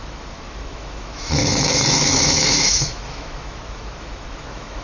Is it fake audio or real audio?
fake